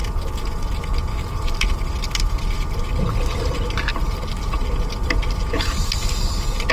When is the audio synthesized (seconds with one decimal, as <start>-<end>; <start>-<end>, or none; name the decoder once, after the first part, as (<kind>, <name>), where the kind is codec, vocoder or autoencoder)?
1.1-1.8 (vocoder, BigVGAN v2); 3.9-4.5